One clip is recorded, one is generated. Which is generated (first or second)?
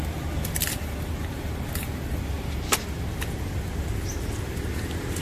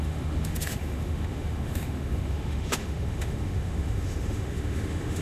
second